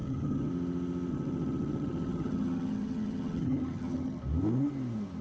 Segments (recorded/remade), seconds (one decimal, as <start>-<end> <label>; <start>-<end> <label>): 0.0-0.5 remade; 0.5-1.1 recorded; 1.1-4.2 remade; 4.2-5.2 recorded